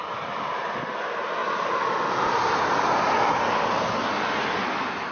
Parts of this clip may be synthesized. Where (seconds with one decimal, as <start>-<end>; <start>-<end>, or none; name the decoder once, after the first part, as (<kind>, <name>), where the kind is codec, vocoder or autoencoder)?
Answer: none